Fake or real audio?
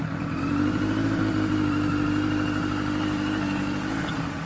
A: real